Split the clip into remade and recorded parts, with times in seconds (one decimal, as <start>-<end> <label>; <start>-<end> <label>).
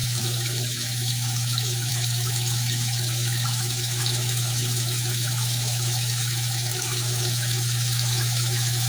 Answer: 0.0-8.9 remade